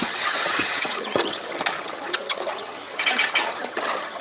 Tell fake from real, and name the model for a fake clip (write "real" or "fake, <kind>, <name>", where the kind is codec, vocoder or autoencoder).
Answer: fake, vocoder, HiFi-GAN